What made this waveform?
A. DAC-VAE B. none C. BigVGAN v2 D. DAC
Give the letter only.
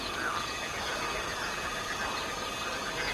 B